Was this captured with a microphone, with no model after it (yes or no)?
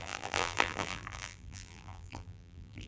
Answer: no